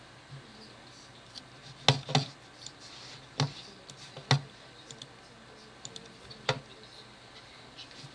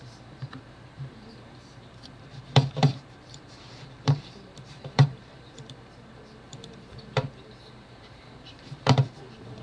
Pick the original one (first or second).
first